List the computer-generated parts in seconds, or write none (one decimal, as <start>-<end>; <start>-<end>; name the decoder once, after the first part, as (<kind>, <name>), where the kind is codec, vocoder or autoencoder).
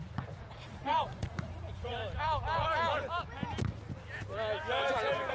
0.0-2.0 (vocoder, Vocos)